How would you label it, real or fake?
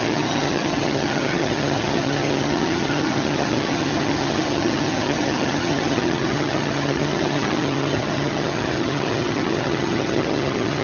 fake